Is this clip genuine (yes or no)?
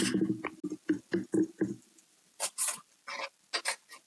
yes